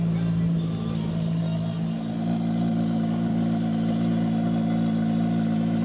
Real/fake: real